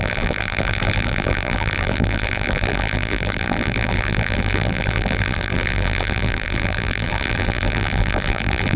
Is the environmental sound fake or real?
fake